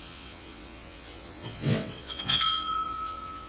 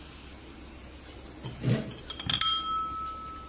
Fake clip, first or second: first